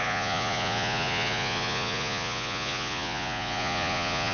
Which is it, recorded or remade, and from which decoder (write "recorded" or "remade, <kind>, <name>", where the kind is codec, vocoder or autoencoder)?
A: remade, vocoder, Vocos